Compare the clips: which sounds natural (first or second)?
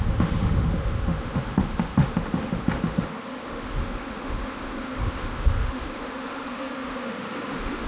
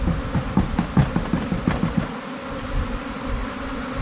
second